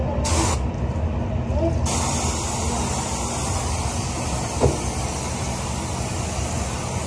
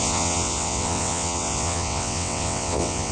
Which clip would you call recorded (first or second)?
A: first